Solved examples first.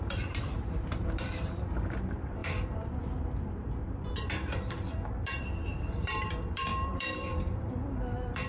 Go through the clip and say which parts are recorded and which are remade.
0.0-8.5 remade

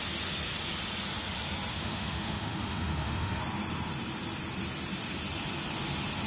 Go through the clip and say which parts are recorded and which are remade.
0.0-1.7 recorded; 1.7-3.4 remade; 3.4-6.3 recorded

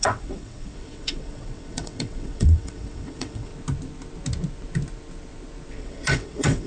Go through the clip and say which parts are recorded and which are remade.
0.0-3.5 remade; 3.5-5.7 recorded; 5.7-6.7 remade

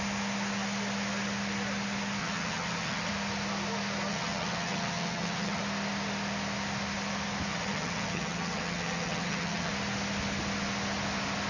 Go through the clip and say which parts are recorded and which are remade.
0.0-2.2 recorded; 2.2-3.1 remade; 3.1-4.1 recorded; 4.1-5.6 remade; 5.6-7.5 recorded; 7.5-9.7 remade; 9.7-11.5 recorded